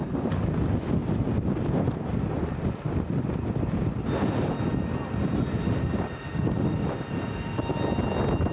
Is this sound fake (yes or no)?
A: no